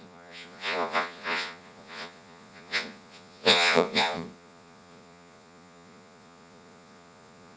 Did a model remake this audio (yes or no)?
yes